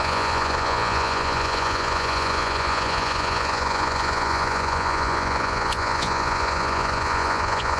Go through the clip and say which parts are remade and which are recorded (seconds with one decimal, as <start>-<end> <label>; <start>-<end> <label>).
0.0-7.8 remade